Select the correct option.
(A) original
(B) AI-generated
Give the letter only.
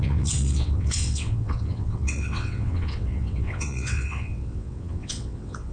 B